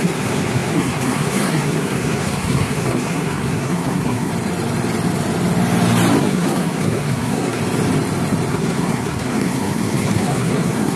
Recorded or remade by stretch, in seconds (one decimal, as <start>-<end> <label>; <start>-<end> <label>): 0.0-4.3 remade; 4.3-6.2 recorded; 6.2-7.6 remade; 7.6-8.5 recorded; 8.5-11.0 remade